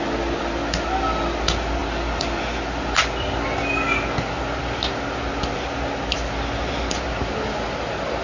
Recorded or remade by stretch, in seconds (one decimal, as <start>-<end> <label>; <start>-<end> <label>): 0.0-8.2 recorded